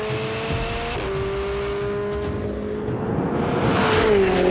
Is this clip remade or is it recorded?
recorded